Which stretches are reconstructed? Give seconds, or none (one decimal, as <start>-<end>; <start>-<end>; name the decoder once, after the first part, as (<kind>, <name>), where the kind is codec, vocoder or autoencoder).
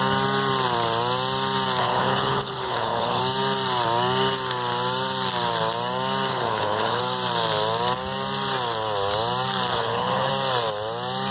1.8-3.2 (codec, HILCodec); 6.3-7.0; 9.7-10.3